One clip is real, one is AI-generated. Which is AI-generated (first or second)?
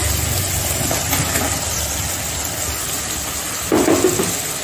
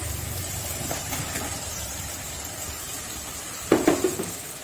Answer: second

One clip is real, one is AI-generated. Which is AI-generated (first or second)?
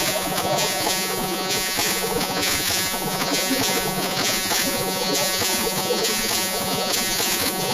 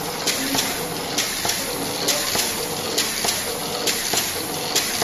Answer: first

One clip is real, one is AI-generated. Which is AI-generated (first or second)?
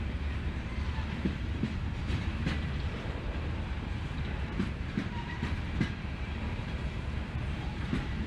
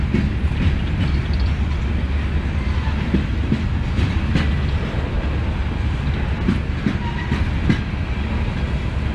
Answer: first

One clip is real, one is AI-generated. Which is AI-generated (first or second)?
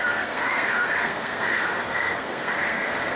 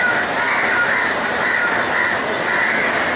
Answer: first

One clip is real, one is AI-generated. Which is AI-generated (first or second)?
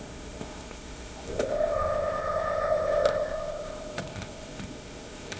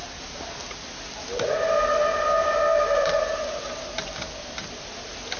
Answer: first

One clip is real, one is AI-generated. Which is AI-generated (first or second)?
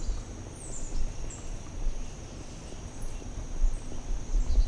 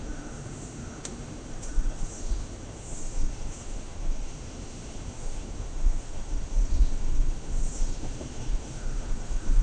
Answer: second